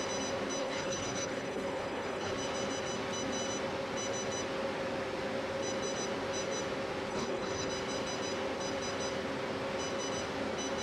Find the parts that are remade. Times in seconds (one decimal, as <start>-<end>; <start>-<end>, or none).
0.6-2.3; 7.1-7.7